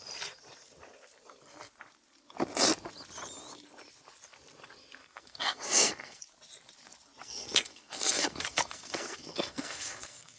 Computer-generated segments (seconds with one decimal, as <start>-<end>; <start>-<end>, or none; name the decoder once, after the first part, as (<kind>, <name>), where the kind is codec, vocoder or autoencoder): 5.0-6.2 (codec, SNAC); 7.2-10.4